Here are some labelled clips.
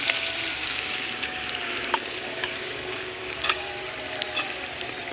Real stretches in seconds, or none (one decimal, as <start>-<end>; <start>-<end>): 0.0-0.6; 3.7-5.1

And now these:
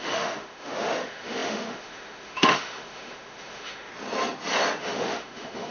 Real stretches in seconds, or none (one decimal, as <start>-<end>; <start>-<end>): 3.9-4.8

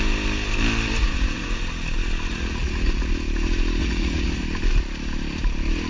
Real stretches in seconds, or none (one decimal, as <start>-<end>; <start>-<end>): 0.0-1.0; 1.6-2.3; 3.1-3.8; 4.4-5.9